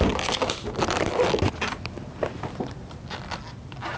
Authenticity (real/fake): real